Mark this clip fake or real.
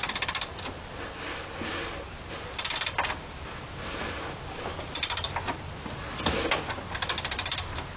real